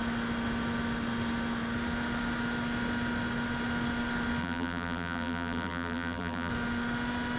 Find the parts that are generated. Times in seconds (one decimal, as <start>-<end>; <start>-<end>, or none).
4.4-6.5

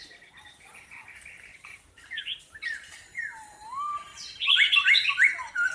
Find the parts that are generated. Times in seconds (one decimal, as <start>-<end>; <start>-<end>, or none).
1.5-2.9; 4.1-5.1

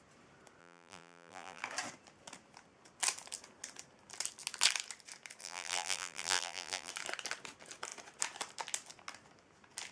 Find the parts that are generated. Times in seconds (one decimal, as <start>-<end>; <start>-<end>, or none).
0.6-1.6; 5.4-6.9